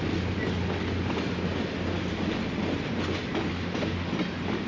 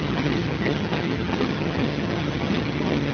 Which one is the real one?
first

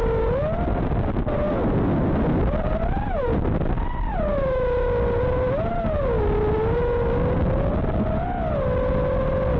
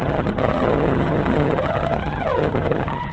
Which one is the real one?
first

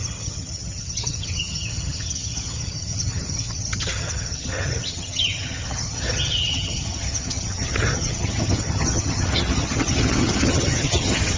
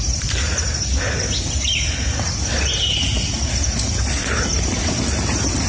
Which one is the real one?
second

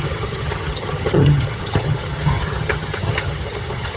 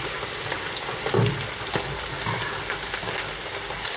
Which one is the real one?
second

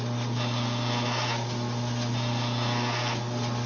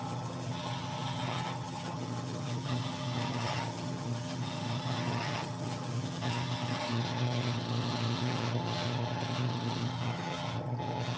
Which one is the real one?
first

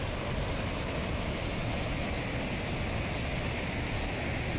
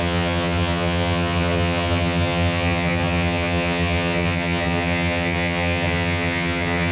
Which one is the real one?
first